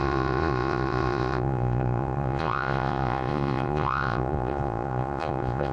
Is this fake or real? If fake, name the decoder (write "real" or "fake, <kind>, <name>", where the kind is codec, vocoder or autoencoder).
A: fake, vocoder, Vocos